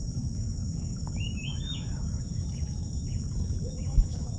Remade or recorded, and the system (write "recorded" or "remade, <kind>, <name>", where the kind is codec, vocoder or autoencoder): remade, autoencoder, DAC-VAE